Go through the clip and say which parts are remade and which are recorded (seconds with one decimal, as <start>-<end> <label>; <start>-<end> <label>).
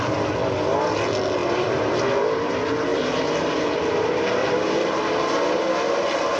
0.0-1.4 recorded; 1.4-2.5 remade; 2.5-2.9 recorded; 2.9-3.8 remade; 3.8-4.4 recorded; 4.4-5.6 remade; 5.6-6.4 recorded